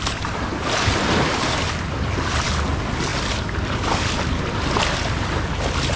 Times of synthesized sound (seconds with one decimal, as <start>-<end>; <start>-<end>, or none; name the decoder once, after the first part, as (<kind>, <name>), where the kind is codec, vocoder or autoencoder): 0.0-0.5 (vocoder, BigVGAN v2); 1.9-6.0